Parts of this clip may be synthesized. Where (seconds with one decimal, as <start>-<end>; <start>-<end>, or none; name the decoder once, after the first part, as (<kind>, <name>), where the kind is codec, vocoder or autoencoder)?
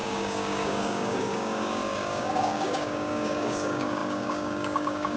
0.0-5.2 (codec, DAC)